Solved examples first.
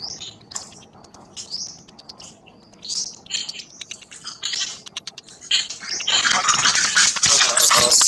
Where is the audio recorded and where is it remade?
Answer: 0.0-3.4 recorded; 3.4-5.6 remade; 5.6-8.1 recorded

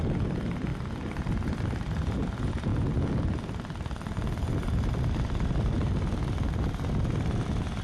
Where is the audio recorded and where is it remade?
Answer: 0.0-2.7 remade; 2.7-7.8 recorded

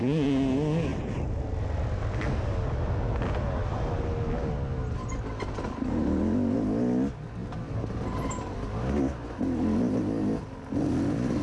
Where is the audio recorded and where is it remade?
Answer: 0.0-11.4 recorded